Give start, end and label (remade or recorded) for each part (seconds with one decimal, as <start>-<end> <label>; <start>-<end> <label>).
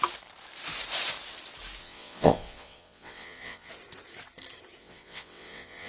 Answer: 0.0-1.8 recorded; 1.8-3.7 remade; 3.7-4.8 recorded; 4.8-5.9 remade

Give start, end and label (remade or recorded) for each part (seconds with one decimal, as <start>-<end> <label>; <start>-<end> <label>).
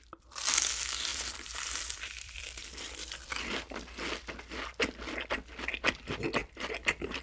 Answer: 0.0-1.1 recorded; 1.1-2.7 remade; 2.7-6.4 recorded; 6.4-7.2 remade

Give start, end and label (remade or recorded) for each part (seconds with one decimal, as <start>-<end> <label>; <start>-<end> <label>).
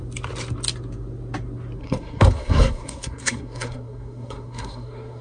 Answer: 0.0-1.8 recorded; 1.8-5.2 remade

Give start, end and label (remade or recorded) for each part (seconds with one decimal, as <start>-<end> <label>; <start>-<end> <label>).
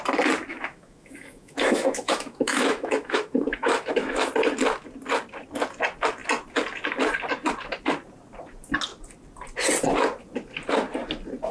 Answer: 0.0-0.5 recorded; 0.5-4.3 remade; 4.3-11.5 recorded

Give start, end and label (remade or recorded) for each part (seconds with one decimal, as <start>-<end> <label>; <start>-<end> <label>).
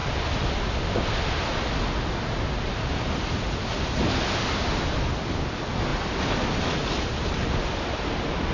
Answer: 0.0-8.5 recorded